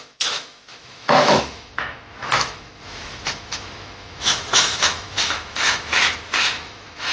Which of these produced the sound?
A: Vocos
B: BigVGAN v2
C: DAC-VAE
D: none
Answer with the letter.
C